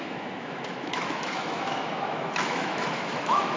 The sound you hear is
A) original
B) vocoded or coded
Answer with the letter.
B